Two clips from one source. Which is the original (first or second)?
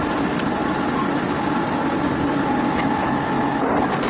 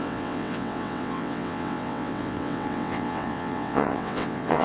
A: first